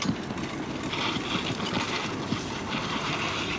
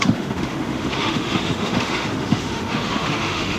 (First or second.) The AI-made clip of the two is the second